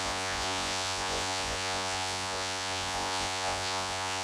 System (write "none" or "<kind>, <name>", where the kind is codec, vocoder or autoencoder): vocoder, Vocos